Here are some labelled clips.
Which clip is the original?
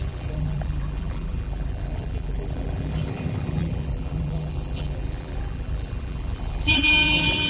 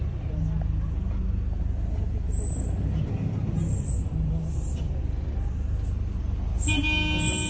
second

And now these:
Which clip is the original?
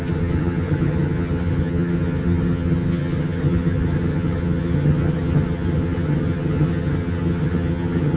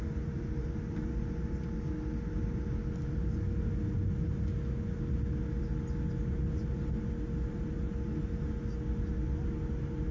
second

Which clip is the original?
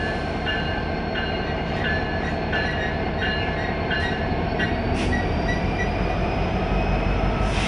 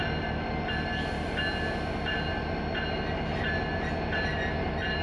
second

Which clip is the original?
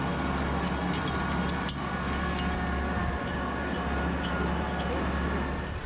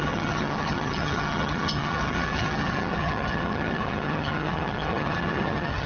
first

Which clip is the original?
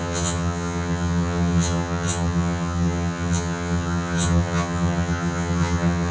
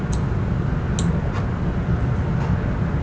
second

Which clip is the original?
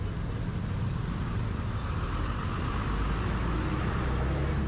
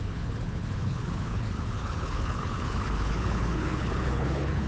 first